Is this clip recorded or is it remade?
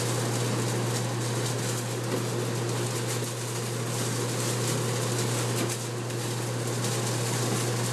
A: recorded